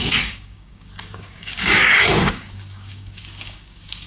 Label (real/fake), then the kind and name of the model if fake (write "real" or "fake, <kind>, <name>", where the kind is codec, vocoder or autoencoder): fake, codec, DAC